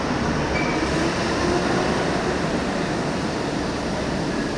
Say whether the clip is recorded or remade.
recorded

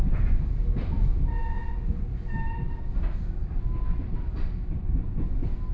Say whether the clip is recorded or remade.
recorded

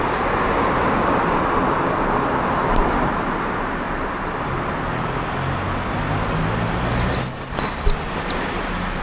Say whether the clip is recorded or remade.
recorded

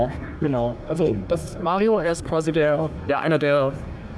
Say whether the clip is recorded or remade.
remade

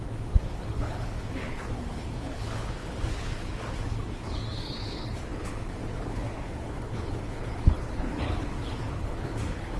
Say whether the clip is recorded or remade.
remade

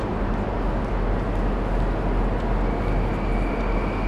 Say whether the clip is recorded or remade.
recorded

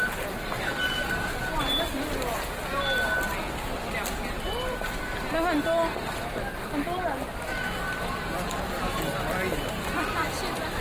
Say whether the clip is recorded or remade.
recorded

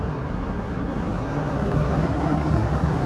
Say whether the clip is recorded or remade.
remade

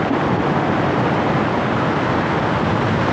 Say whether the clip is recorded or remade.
recorded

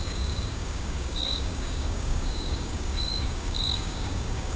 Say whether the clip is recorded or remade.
remade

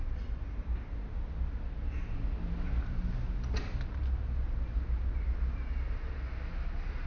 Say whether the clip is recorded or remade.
recorded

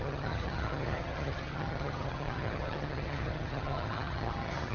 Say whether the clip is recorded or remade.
remade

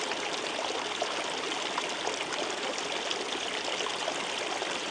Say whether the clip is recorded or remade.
recorded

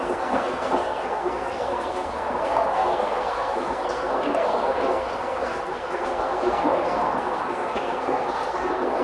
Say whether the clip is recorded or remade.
remade